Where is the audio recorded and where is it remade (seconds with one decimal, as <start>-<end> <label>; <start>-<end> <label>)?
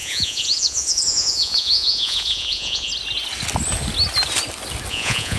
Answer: 0.0-2.9 remade; 2.9-4.9 recorded; 4.9-5.4 remade